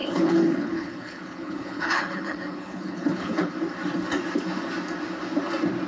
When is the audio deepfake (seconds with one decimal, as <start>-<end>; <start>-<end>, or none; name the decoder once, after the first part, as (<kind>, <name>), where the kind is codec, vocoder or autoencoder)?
0.0-3.5 (codec, HILCodec)